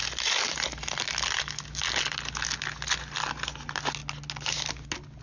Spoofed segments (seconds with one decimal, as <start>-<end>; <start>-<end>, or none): none